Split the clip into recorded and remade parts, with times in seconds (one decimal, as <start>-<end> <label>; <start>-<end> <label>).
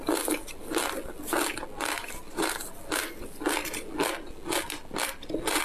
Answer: 0.0-5.6 recorded